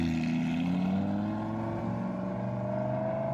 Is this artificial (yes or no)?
no